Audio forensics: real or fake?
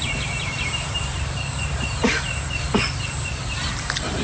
fake